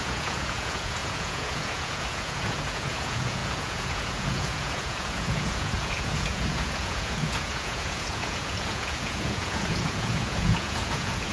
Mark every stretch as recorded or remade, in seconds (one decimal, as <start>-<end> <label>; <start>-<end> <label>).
0.0-11.3 remade